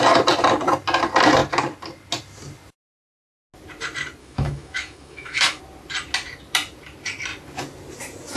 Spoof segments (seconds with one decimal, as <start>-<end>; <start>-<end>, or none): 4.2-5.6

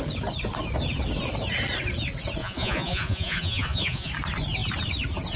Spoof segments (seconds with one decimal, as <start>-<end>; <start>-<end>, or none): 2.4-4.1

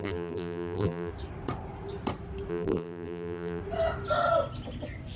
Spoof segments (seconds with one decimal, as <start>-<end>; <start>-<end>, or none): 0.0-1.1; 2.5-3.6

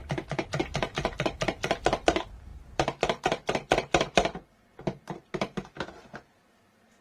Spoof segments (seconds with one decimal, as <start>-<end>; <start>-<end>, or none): 0.6-7.0